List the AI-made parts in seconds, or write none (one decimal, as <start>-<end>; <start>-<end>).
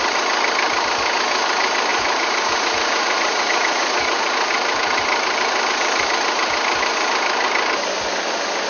1.9-4.5